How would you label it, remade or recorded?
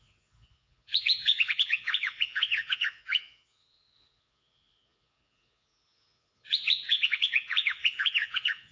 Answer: remade